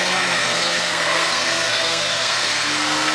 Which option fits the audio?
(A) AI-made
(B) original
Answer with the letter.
A